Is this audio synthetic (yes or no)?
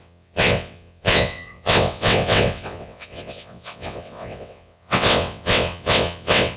yes